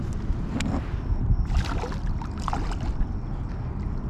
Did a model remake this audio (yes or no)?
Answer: no